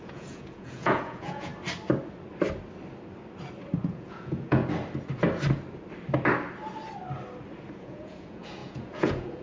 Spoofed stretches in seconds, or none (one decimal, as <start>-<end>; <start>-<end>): 0.0-1.5; 3.8-4.6; 7.8-9.4